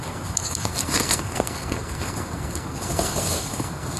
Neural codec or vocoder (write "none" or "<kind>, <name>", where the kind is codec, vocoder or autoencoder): codec, SNAC